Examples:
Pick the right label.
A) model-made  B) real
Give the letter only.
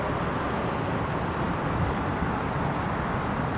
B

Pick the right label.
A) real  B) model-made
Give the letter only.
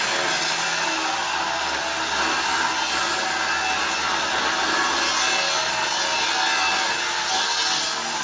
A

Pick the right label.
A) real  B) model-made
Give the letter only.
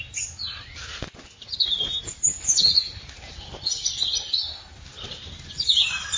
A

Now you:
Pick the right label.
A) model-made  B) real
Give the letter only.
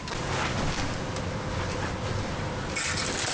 B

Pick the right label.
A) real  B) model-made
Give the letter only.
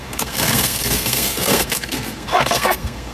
B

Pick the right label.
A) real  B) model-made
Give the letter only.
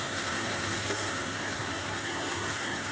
B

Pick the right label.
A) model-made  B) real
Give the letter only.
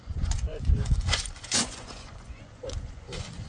A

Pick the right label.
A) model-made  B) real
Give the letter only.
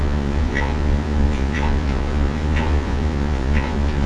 A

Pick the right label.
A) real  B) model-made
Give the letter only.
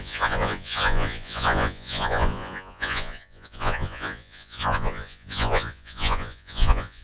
B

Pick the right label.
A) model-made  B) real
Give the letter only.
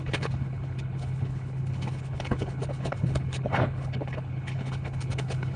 A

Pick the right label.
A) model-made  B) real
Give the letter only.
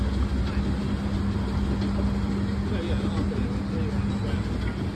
B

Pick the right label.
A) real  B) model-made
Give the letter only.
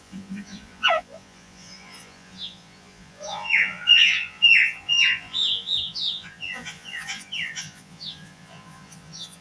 B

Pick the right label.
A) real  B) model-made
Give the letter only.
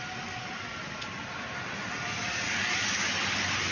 A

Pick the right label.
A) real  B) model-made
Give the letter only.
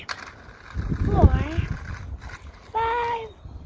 A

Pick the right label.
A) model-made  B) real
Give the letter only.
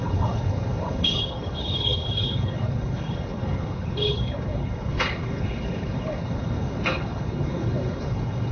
A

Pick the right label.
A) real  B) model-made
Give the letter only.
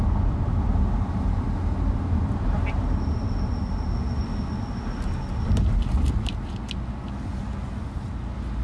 A